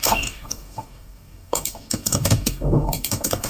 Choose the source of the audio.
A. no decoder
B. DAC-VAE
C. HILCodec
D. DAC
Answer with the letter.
D